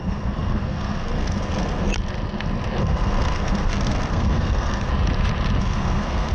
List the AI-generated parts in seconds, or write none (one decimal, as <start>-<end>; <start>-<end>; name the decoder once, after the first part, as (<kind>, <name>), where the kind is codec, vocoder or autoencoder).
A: 0.0-1.9 (codec, SNAC); 2.8-4.9; 5.6-6.3